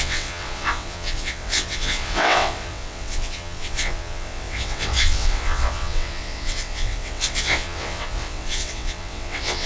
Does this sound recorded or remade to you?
remade